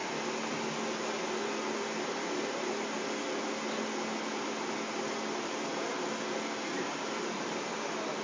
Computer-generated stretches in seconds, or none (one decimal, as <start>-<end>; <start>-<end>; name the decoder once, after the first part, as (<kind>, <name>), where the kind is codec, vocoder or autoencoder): none